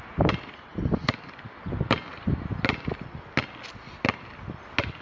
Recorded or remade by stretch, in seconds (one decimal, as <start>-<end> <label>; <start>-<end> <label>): 0.0-5.0 recorded